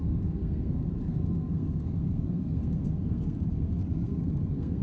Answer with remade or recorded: remade